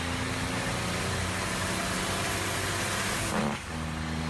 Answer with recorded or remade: recorded